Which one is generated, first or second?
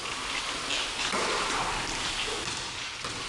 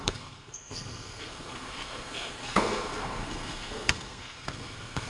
second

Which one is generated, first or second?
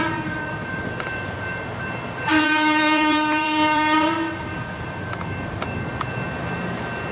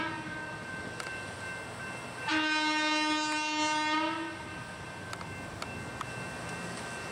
first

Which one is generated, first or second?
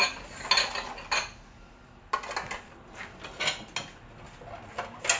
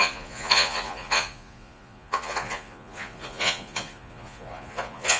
second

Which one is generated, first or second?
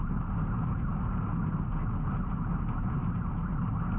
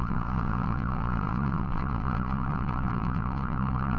second